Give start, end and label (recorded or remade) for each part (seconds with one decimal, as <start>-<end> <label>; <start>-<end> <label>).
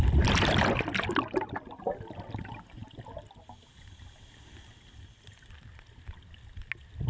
0.0-7.1 recorded